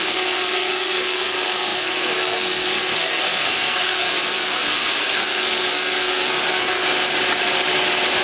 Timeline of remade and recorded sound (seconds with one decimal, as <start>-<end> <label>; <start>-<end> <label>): 0.0-6.8 remade; 6.8-8.2 recorded